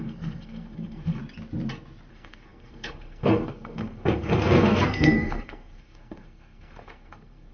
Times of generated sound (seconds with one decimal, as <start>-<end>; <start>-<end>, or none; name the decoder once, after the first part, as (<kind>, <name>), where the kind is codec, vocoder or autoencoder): 0.0-1.2 (codec, SNAC); 2.1-7.5